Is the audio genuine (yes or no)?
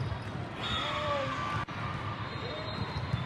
no